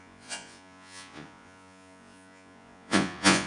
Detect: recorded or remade remade